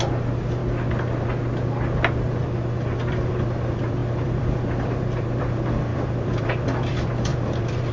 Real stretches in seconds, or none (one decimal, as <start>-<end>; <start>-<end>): 0.6-2.4